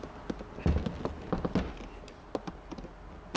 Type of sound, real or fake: real